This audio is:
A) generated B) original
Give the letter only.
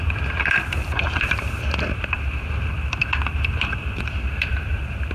A